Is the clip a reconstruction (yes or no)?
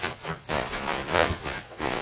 yes